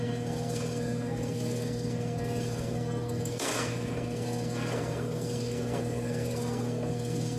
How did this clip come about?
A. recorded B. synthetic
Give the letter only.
B